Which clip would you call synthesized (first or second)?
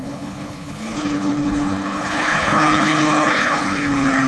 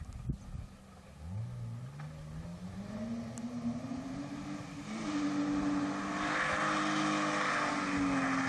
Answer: first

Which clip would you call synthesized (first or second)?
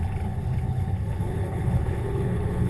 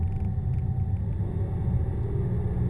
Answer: first